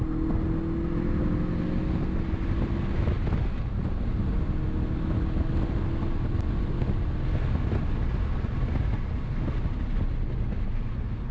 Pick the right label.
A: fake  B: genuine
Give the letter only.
B